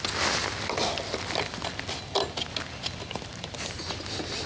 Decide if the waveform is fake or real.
real